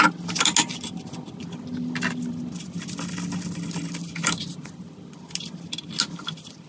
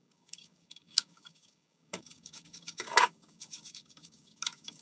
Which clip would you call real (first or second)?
first